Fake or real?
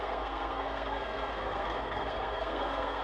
fake